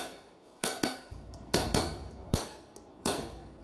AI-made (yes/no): yes